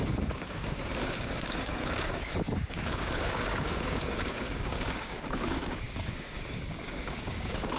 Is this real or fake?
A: fake